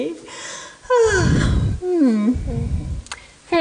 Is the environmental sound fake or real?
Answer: real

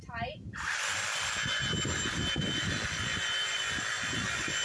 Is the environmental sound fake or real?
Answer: real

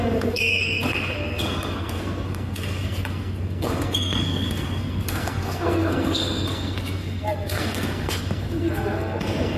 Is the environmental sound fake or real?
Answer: fake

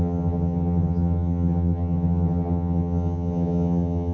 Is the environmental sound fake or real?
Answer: fake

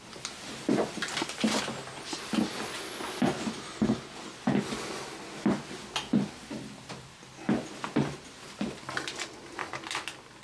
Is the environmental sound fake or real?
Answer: real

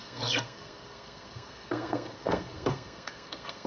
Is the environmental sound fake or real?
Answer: fake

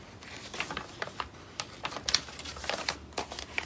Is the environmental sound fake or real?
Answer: real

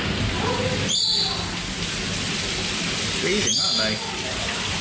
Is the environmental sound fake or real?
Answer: real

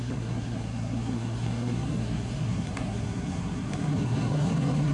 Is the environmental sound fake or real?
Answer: fake